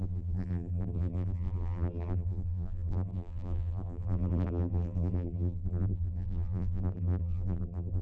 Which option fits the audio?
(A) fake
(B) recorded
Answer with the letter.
A